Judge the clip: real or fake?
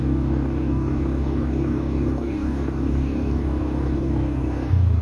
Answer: fake